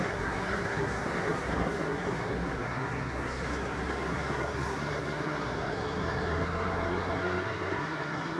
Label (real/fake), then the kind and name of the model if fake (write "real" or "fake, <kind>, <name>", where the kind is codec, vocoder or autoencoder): fake, codec, SNAC